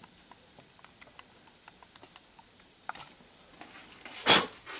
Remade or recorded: recorded